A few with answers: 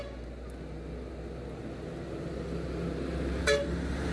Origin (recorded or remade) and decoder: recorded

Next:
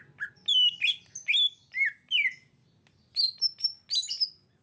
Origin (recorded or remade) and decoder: recorded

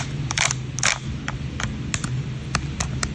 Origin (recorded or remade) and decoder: recorded